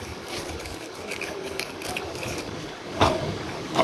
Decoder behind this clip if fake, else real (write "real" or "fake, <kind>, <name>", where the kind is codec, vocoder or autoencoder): fake, codec, DAC